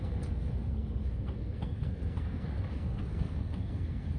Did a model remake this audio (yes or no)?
yes